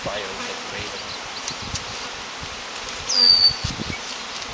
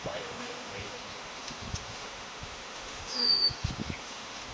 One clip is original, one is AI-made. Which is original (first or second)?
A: first